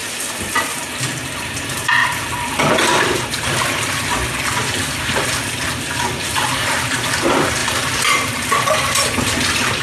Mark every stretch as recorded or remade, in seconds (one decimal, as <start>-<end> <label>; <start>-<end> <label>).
0.0-9.8 recorded